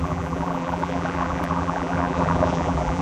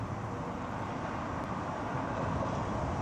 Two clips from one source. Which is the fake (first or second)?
first